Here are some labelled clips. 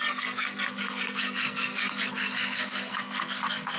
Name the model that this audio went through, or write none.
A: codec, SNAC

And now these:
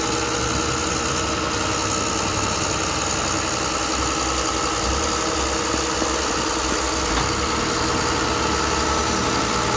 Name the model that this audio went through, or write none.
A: none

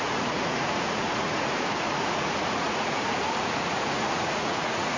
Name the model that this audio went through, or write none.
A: vocoder, Vocos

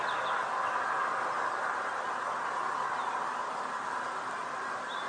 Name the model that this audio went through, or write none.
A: none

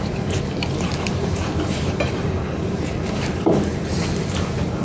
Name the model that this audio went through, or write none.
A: vocoder, BigVGAN v2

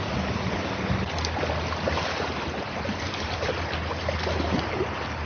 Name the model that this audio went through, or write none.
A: none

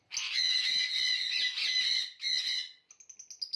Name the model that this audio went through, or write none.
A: none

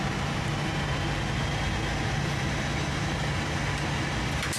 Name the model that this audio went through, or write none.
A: none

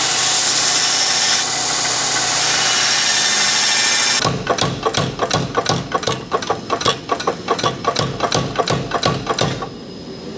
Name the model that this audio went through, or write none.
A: none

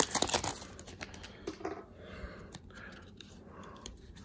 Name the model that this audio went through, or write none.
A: none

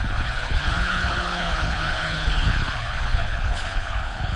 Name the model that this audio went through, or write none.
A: codec, HILCodec